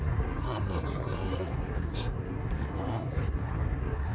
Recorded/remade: remade